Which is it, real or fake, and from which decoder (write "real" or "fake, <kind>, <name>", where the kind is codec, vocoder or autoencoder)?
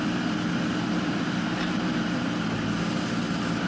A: real